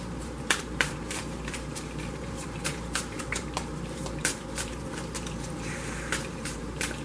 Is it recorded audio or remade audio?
remade